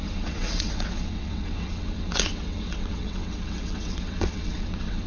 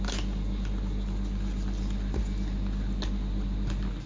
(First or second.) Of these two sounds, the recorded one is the second